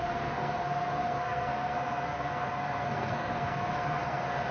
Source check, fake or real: fake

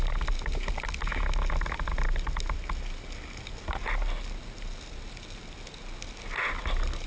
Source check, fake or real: real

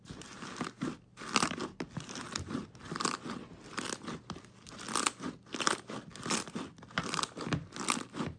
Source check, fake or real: real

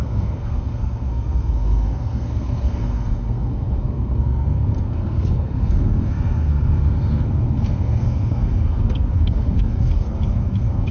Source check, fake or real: fake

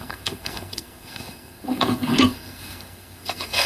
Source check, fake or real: fake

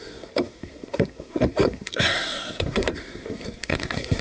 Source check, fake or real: fake